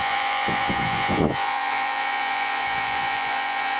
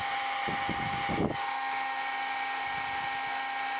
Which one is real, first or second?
second